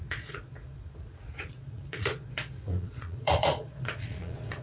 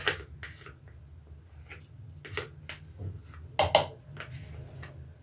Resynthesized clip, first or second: first